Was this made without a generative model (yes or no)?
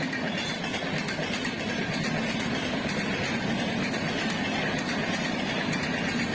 yes